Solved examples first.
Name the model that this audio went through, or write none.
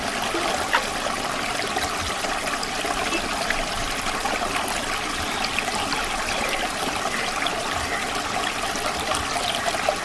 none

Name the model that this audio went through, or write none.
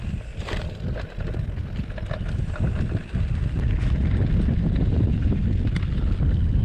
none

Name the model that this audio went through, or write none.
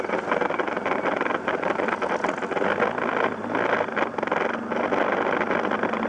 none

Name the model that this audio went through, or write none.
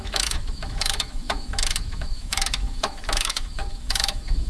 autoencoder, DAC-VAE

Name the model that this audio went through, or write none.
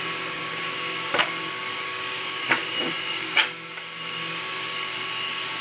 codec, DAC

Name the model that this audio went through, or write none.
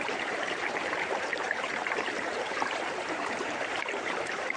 vocoder, BigVGAN v2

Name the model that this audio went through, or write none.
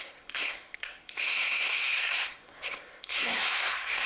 codec, SNAC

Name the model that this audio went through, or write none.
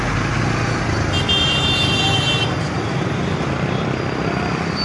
none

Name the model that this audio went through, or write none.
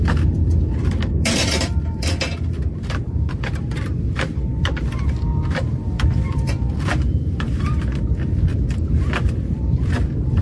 vocoder, BigVGAN v2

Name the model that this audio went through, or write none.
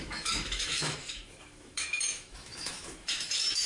autoencoder, DAC-VAE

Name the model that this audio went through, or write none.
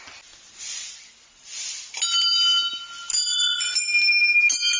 none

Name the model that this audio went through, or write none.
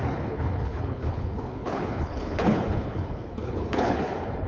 codec, HILCodec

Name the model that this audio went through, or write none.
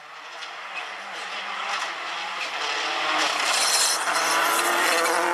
none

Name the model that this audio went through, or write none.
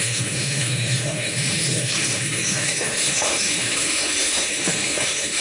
autoencoder, DAC-VAE